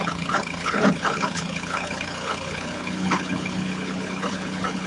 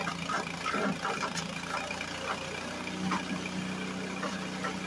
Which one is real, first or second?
second